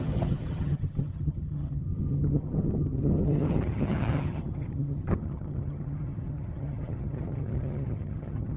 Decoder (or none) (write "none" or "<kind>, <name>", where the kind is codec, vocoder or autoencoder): vocoder, HiFi-GAN